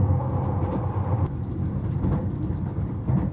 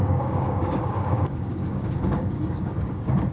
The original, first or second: first